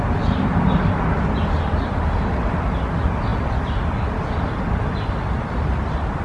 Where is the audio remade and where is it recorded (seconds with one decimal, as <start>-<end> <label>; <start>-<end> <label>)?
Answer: 0.0-6.2 recorded